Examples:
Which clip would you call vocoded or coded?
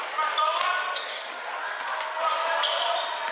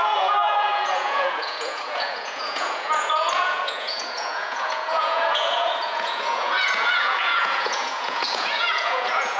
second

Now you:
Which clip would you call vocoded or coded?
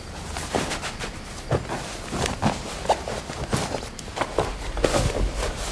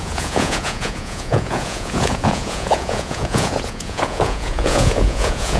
second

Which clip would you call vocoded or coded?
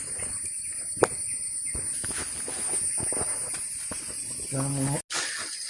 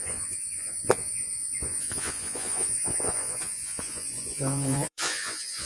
second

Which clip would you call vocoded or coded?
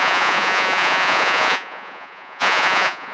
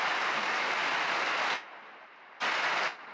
first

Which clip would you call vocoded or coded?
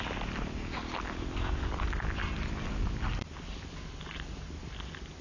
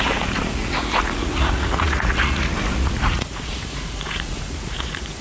second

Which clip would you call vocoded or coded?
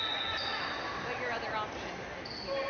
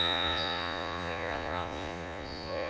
second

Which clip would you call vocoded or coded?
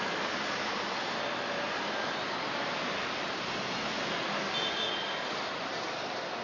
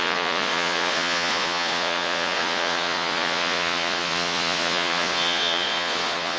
second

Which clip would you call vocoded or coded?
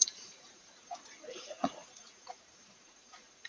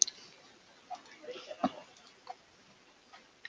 first